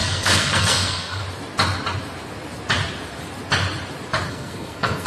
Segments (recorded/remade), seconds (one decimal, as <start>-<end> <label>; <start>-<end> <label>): 0.0-1.2 remade; 1.2-4.3 recorded; 4.3-5.1 remade